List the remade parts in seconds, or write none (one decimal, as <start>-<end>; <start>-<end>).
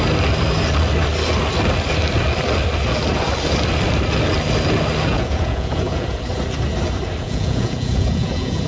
5.1-6.2; 7.2-8.7